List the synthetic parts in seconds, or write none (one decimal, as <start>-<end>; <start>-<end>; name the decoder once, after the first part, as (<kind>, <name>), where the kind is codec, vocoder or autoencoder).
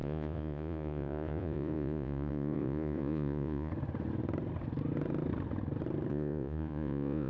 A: 0.0-3.7 (vocoder, Vocos); 6.1-7.3